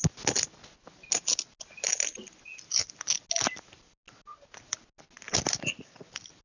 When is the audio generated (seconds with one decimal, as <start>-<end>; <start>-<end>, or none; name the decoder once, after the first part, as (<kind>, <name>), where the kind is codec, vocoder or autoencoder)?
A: none